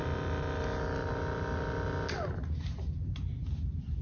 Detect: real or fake real